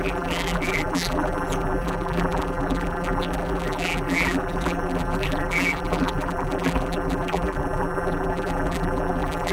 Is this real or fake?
fake